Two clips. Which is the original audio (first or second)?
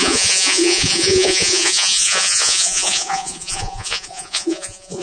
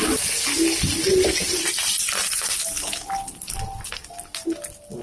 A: second